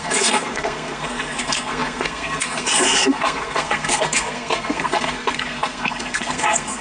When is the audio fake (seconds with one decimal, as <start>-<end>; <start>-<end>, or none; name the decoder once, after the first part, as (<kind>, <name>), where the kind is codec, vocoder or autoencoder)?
0.0-6.8 (codec, SNAC)